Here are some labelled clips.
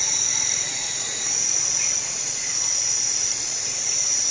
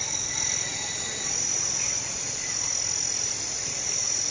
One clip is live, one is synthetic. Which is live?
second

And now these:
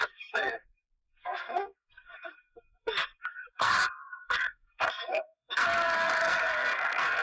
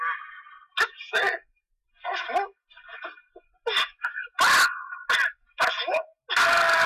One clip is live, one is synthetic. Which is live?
second